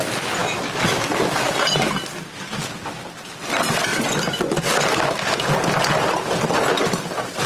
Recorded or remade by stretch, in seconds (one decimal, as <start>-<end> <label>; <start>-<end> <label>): 0.0-0.4 recorded; 0.4-1.5 remade; 1.5-7.5 recorded